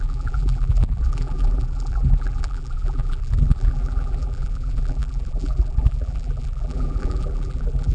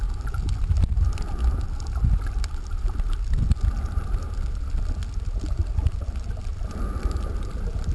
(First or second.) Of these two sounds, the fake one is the first